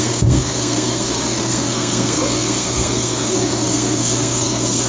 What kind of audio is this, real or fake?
fake